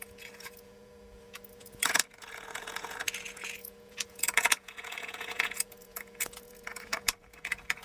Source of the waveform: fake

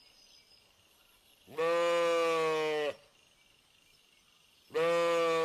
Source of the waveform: real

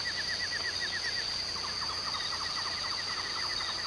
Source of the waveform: real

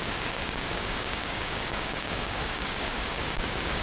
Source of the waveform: fake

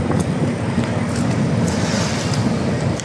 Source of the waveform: fake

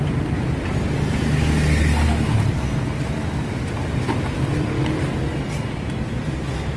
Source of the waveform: real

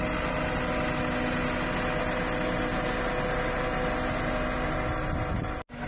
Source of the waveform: real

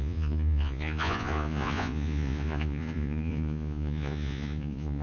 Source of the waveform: fake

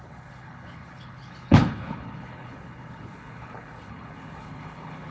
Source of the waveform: fake